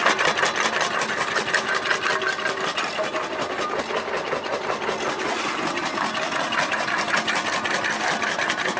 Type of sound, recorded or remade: recorded